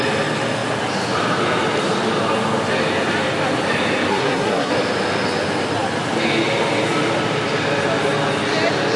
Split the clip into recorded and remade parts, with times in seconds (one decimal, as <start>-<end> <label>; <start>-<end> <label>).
0.0-4.1 recorded; 4.1-4.7 remade; 4.7-9.0 recorded

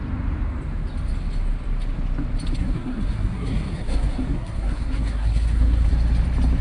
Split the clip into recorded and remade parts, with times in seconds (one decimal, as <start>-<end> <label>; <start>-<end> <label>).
0.0-2.6 recorded; 2.6-5.9 remade; 5.9-6.6 recorded

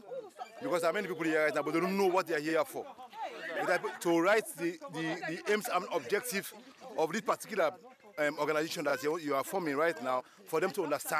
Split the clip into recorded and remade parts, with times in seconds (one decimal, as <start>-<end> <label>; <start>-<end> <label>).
0.0-11.2 recorded

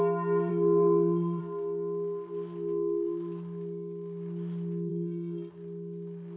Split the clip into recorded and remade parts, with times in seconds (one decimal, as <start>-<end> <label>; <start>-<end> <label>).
0.0-0.5 recorded; 0.5-1.4 remade; 1.4-4.9 recorded; 4.9-5.5 remade; 5.5-6.4 recorded

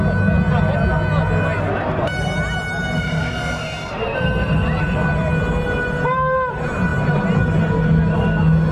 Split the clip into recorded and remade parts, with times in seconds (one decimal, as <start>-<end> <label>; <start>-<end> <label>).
0.0-8.7 recorded

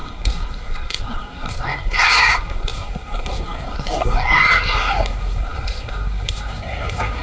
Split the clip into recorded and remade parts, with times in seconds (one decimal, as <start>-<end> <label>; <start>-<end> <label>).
0.0-7.2 remade

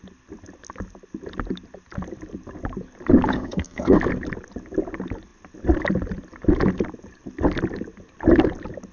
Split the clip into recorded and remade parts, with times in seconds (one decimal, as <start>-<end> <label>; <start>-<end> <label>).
0.0-3.3 recorded; 3.3-4.0 remade; 4.0-8.9 recorded